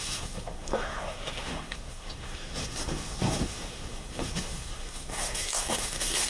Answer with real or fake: fake